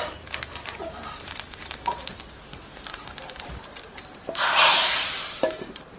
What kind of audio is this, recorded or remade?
remade